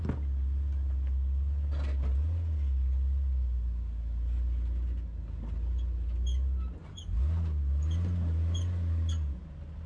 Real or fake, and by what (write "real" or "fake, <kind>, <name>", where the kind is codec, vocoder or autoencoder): real